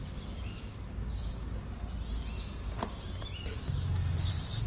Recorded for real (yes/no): yes